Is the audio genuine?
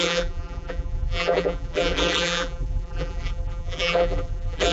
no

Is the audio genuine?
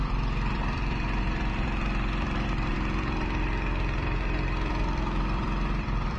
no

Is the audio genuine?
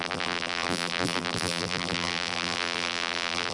no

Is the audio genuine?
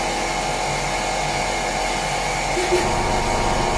yes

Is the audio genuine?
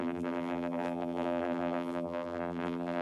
no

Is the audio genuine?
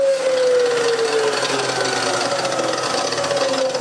yes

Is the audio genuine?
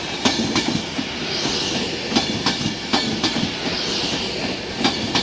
yes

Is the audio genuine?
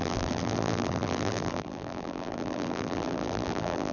no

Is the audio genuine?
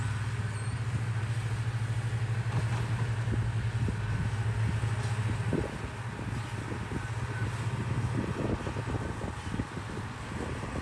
yes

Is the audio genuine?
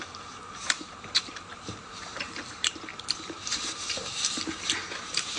no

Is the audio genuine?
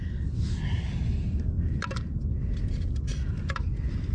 yes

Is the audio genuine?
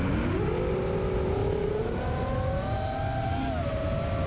yes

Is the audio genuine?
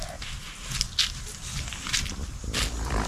yes